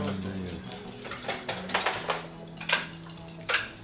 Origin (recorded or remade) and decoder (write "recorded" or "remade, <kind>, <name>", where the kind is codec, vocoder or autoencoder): recorded